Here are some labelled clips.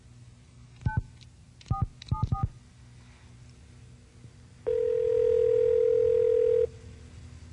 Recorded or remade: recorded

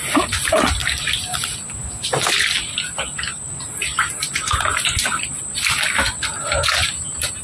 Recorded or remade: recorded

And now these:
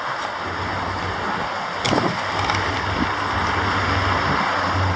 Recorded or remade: recorded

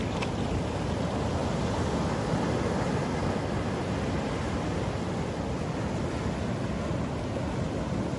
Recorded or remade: recorded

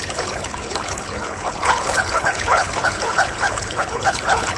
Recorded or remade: remade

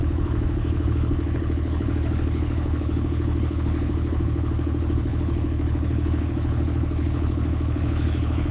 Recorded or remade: remade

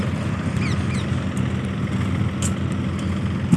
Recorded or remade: recorded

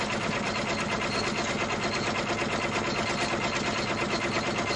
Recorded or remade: recorded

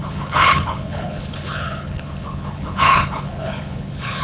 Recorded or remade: remade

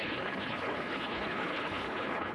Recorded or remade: remade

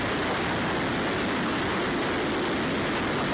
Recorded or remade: recorded